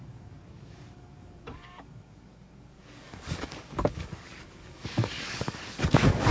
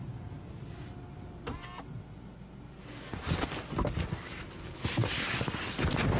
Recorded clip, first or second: second